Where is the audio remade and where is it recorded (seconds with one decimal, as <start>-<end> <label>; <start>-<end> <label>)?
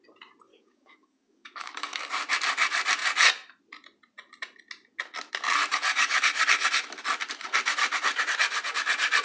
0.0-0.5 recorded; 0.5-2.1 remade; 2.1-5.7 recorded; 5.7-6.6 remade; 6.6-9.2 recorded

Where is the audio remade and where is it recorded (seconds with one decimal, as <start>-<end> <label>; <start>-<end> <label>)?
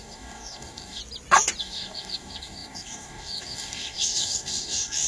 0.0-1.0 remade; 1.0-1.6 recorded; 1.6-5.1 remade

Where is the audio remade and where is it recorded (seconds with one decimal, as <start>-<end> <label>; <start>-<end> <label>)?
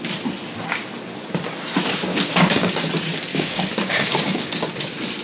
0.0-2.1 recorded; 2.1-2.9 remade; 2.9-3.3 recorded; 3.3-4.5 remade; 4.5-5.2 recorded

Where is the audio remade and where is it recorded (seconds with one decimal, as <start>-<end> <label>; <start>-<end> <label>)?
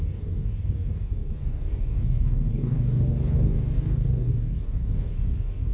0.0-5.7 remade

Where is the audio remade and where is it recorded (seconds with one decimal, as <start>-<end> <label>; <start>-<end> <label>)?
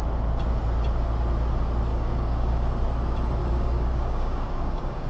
0.0-1.9 recorded; 1.9-2.7 remade; 2.7-3.4 recorded; 3.4-5.1 remade